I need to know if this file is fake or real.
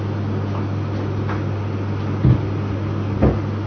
real